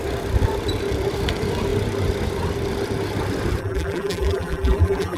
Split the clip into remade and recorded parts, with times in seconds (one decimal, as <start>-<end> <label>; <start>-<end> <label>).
0.0-3.6 recorded; 3.6-5.2 remade